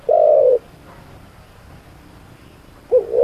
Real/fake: real